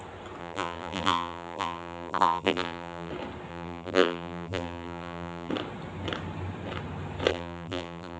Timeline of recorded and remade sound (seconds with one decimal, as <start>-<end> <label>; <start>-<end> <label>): 0.0-0.4 recorded; 0.4-3.1 remade; 3.1-3.5 recorded; 3.5-5.5 remade; 5.5-7.3 recorded; 7.3-8.2 remade